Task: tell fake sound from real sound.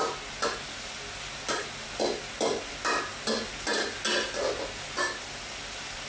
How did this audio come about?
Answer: real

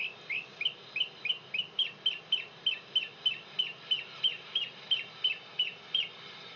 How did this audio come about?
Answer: real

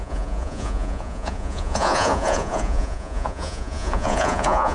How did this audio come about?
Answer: fake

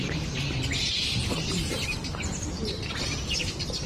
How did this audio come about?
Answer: fake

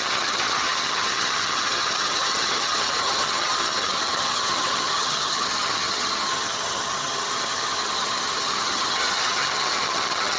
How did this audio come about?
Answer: fake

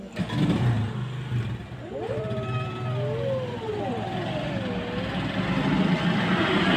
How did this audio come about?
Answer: real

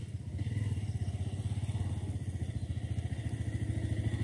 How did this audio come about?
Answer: real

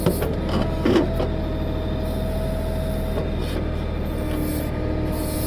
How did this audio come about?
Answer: real